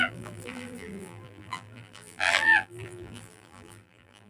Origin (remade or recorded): remade